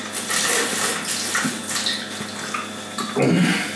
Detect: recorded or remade recorded